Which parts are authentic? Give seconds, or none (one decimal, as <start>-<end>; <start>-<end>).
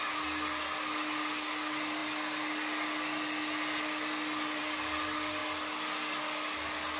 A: 0.0-7.0